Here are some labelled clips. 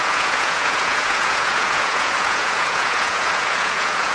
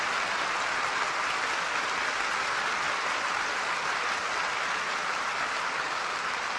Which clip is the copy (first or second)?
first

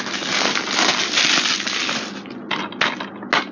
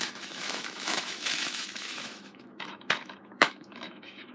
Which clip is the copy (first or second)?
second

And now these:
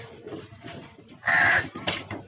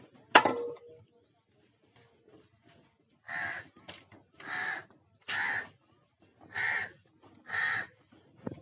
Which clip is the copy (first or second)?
first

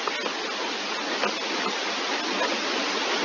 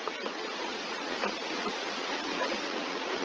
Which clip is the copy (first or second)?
second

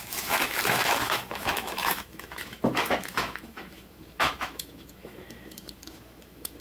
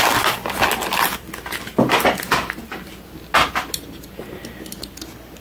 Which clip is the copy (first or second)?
first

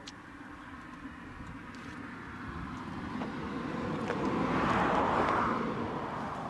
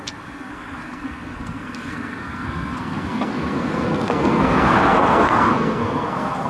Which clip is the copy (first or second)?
second